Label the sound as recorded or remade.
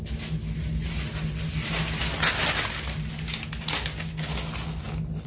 recorded